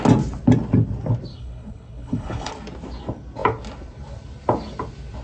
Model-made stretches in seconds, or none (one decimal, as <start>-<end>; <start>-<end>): 1.3-2.5